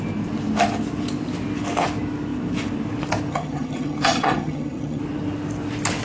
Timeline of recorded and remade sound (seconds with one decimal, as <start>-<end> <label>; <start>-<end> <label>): 0.0-3.3 recorded; 3.3-5.0 remade; 5.0-6.0 recorded